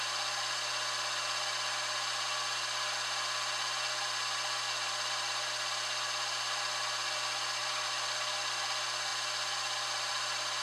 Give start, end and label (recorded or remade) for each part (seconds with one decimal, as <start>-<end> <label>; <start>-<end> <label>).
0.0-7.6 recorded; 7.6-8.3 remade; 8.3-10.6 recorded